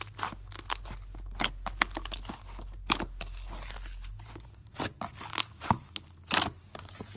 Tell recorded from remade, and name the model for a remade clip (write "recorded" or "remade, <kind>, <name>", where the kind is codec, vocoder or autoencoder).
recorded